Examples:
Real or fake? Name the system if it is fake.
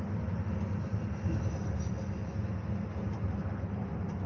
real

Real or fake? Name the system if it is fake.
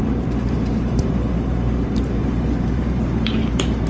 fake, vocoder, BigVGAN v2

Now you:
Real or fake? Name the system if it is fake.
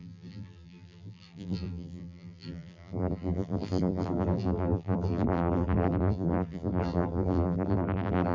fake, vocoder, BigVGAN v2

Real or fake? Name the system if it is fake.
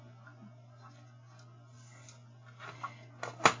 real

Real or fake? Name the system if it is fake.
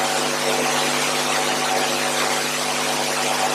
real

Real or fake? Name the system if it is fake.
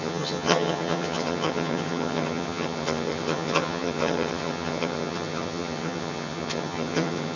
fake, vocoder, HiFi-GAN